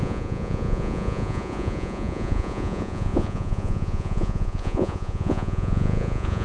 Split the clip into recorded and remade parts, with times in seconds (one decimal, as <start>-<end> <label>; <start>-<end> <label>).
0.0-6.4 remade